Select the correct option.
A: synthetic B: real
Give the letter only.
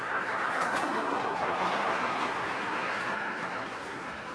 A